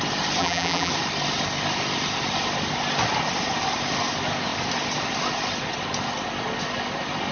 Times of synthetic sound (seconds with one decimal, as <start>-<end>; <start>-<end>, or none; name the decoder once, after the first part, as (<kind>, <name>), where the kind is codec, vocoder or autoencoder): 0.4-0.9 (vocoder, BigVGAN v2)